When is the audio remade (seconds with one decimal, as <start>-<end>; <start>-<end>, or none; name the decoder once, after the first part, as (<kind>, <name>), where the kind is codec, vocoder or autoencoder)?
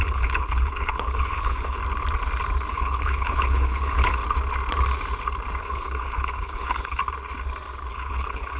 0.0-1.8 (codec, HILCodec); 2.7-4.2; 5.6-7.0; 7.9-8.6